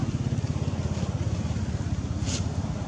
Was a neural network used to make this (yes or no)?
no